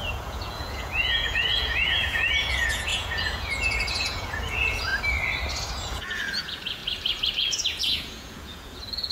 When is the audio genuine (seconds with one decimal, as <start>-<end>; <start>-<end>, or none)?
4.9-6.0; 6.8-7.3